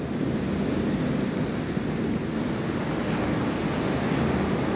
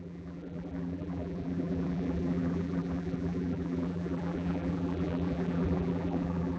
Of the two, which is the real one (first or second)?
first